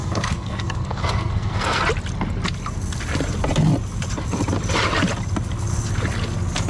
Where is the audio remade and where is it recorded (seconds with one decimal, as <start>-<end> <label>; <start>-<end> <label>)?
0.0-1.8 remade; 1.8-6.7 recorded